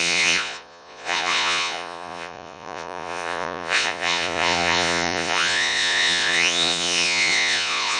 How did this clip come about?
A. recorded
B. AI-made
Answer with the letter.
B